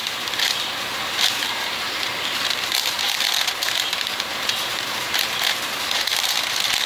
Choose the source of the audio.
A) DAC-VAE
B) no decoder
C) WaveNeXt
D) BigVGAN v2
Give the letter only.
D